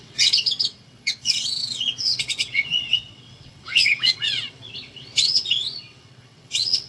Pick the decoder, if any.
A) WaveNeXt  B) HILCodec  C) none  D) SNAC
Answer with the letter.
A